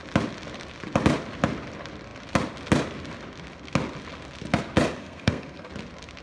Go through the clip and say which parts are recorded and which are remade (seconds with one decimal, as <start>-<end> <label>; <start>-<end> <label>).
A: 0.0-5.0 recorded; 5.0-5.7 remade; 5.7-6.2 recorded